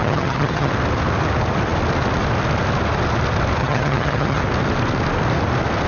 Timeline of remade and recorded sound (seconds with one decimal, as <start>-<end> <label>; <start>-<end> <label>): 0.0-0.7 remade; 0.7-3.6 recorded; 3.6-4.4 remade; 4.4-5.9 recorded